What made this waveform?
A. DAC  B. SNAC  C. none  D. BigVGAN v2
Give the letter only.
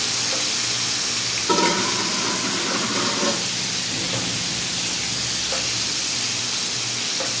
C